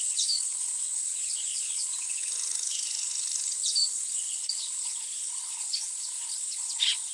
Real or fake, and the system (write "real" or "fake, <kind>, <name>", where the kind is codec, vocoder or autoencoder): fake, codec, HILCodec